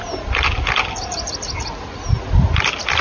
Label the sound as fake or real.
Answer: real